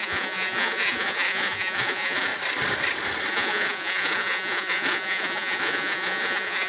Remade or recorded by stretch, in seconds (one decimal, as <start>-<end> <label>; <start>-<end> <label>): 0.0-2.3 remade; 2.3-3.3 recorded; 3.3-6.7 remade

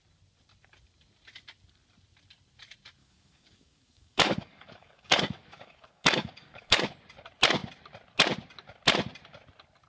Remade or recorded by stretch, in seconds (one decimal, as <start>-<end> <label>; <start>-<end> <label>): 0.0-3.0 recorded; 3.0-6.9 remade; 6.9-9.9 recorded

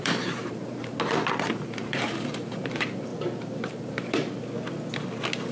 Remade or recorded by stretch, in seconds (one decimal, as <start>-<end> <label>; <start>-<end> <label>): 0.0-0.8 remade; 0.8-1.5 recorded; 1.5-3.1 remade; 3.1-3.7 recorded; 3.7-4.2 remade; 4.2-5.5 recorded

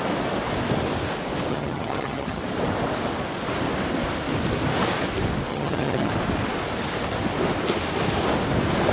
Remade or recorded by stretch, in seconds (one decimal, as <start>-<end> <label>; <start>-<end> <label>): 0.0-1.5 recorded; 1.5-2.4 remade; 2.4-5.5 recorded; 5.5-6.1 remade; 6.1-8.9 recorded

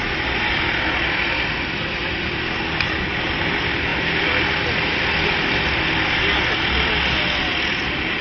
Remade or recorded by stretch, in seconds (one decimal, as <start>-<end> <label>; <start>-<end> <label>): 0.0-8.2 recorded

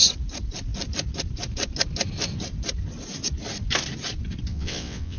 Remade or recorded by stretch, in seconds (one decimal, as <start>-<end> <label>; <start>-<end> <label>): 0.0-4.5 recorded; 4.5-5.2 remade

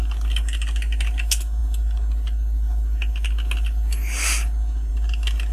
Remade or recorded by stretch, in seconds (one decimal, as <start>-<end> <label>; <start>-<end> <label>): 0.0-5.5 recorded

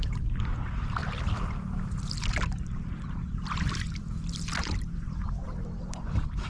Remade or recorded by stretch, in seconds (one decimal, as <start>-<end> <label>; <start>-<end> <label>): 0.0-1.0 remade; 1.0-4.3 recorded; 4.3-6.5 remade